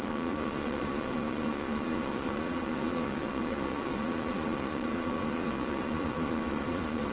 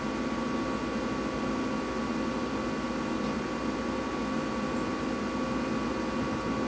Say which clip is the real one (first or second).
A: second